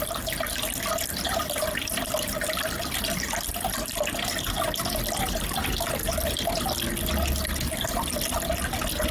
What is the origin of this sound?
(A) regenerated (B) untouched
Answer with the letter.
B